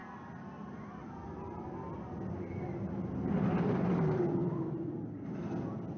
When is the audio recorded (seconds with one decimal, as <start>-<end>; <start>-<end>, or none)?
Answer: 0.0-3.3; 4.4-6.0